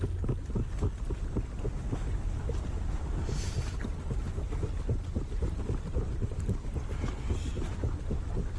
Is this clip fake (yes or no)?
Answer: no